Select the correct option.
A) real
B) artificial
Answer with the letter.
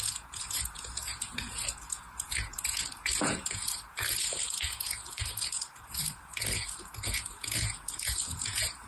B